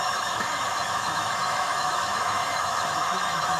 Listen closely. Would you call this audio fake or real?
fake